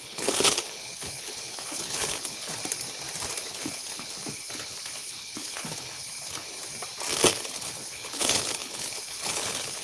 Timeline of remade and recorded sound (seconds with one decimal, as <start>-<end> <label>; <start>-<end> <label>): 0.0-2.6 remade; 2.6-3.4 recorded; 3.4-6.6 remade; 6.6-7.3 recorded; 7.3-9.8 remade